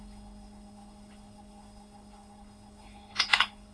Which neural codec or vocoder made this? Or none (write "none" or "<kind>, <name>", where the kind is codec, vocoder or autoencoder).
codec, HILCodec